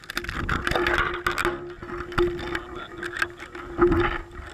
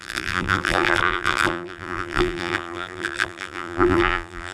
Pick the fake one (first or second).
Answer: second